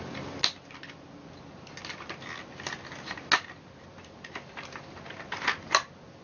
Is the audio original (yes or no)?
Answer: yes